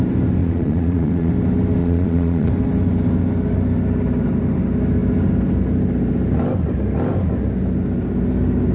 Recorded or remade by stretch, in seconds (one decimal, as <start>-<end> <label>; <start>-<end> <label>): 0.0-0.4 recorded; 0.4-1.3 remade; 1.3-1.8 recorded; 1.8-2.5 remade; 2.5-8.7 recorded